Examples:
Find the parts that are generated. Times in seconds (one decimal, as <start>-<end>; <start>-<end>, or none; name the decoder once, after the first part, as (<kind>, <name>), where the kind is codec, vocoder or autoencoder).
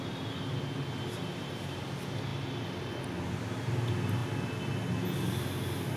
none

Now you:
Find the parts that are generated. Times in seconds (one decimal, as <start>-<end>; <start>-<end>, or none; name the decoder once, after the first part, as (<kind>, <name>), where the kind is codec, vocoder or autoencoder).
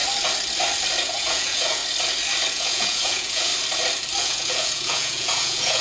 1.0-1.8 (vocoder, Vocos); 2.5-3.5; 4.2-5.8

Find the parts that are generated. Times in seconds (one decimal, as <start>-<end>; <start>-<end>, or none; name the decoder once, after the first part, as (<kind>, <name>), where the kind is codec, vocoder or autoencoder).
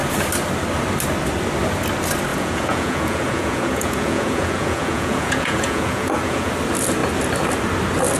2.3-6.5 (vocoder, Vocos)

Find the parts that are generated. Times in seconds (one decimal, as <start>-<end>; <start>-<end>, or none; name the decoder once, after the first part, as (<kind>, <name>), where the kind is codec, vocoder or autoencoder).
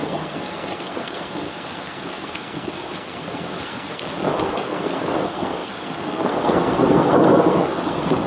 0.0-8.3 (codec, SNAC)